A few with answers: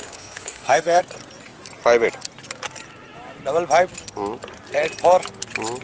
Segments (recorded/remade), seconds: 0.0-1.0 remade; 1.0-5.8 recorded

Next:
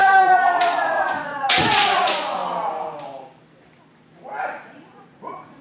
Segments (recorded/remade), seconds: 0.0-2.4 remade; 2.4-4.4 recorded; 4.4-5.6 remade

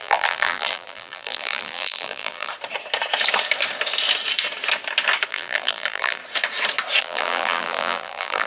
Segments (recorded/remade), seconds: 0.0-2.5 remade; 2.5-5.3 recorded; 5.3-6.2 remade; 6.2-7.0 recorded; 7.0-8.5 remade